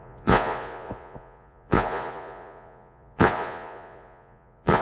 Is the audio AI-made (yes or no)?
yes